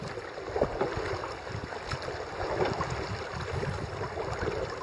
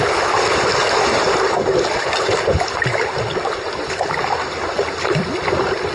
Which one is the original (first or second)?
first